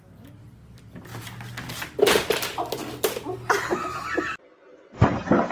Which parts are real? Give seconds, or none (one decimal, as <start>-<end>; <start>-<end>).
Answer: 0.0-5.5